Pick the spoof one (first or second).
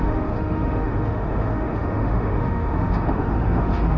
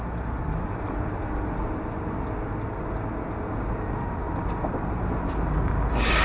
first